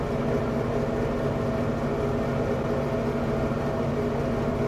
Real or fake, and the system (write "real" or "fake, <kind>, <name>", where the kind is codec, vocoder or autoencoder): real